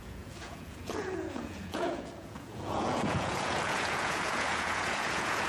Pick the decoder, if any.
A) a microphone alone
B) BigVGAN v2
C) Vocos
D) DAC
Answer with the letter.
C